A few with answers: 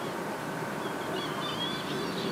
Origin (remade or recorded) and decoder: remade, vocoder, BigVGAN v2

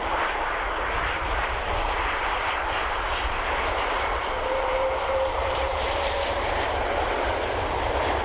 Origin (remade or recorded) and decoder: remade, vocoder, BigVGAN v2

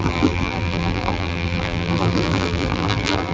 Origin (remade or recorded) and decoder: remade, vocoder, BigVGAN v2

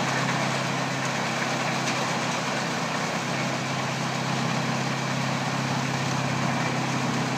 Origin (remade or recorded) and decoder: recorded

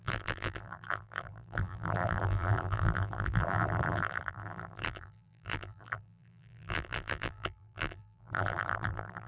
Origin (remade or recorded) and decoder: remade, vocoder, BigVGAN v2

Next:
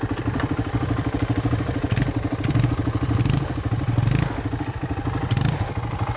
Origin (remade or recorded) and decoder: remade, vocoder, BigVGAN v2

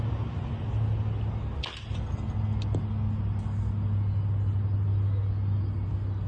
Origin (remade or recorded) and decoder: recorded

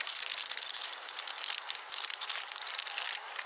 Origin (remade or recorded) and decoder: recorded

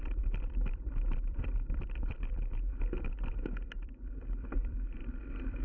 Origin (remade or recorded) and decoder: remade, vocoder, BigVGAN v2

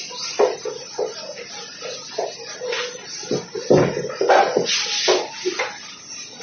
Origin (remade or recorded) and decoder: recorded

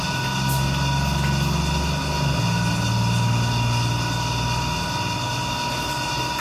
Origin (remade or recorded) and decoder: recorded